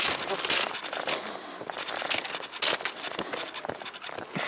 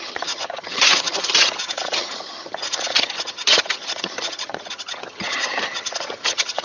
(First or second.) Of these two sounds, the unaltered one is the first